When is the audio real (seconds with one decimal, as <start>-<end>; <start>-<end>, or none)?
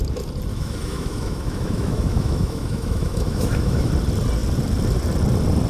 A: 0.0-0.5; 3.9-5.7